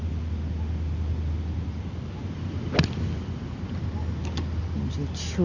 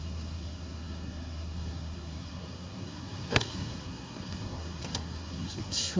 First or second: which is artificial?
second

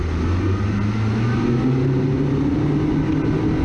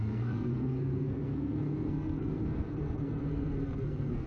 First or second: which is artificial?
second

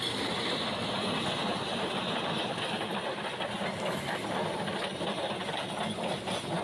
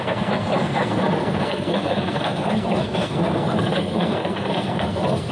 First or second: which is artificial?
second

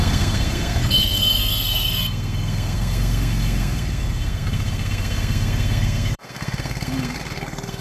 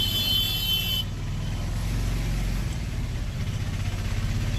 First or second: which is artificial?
first